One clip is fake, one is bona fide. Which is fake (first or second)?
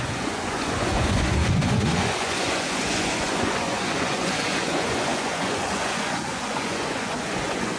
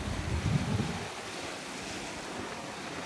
first